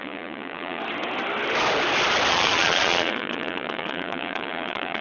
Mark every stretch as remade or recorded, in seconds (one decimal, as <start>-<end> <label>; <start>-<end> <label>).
0.0-0.8 remade; 0.8-2.3 recorded; 2.3-5.0 remade